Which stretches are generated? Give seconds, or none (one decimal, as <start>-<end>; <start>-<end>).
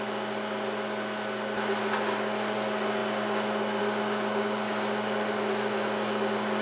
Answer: none